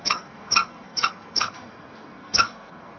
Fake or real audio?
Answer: fake